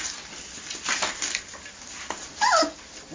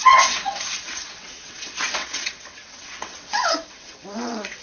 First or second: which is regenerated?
second